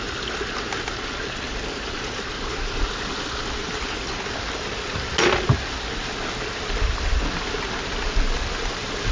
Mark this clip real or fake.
real